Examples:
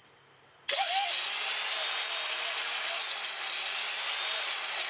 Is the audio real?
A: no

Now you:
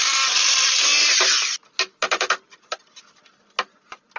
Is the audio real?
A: yes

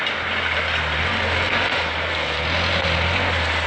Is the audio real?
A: yes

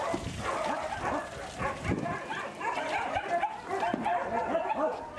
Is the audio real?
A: yes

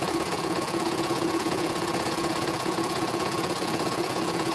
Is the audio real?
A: no